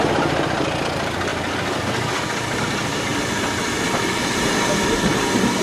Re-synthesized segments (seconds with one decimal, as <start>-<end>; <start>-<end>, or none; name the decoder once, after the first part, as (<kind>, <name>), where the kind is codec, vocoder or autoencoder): none